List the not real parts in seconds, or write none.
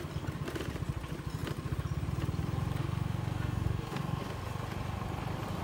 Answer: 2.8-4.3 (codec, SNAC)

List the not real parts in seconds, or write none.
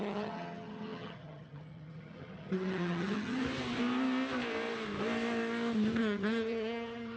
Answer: 0.0-3.4 (vocoder, HiFi-GAN); 6.0-7.2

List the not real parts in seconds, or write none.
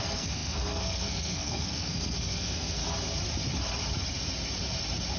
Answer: 0.0-2.8 (codec, SNAC)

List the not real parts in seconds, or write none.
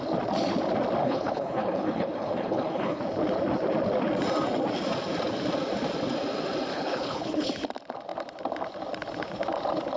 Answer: 1.0-3.0 (codec, HILCodec); 6.7-7.5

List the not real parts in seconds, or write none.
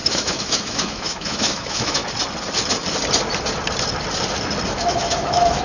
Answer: 0.0-2.0 (autoencoder, DAC-VAE); 4.7-5.6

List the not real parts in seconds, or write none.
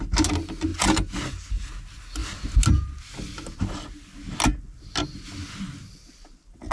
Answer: none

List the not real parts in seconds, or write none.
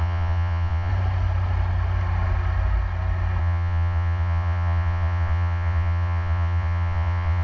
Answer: 0.0-0.9 (vocoder, Vocos); 3.4-7.4